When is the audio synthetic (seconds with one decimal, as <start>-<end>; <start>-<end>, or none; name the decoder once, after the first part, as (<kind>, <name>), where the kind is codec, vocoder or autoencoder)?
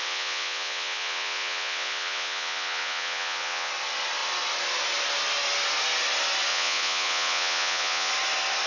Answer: 0.0-3.7 (vocoder, Vocos); 6.5-8.1